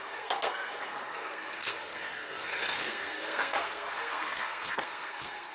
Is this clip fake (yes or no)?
yes